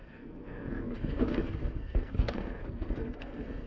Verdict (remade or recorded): remade